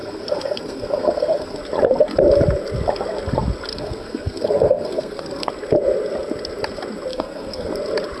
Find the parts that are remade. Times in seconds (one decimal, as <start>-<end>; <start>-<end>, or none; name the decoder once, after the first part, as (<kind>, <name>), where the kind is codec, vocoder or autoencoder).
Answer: 0.0-1.6 (codec, SNAC); 3.7-5.5; 7.1-7.7